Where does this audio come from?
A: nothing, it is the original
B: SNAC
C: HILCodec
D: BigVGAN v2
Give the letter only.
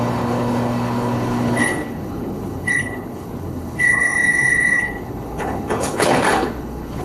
C